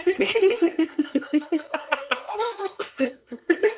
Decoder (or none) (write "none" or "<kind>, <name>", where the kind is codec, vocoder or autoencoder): codec, SNAC